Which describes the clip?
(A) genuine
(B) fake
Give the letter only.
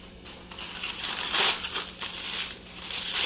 A